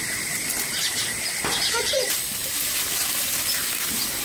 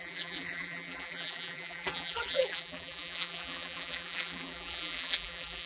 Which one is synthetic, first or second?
second